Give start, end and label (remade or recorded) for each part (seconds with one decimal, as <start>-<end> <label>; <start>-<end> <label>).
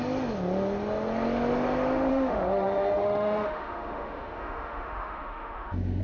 0.0-2.1 recorded; 2.1-6.0 remade